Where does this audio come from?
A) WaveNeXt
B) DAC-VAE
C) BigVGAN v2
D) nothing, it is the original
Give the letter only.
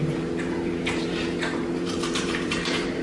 C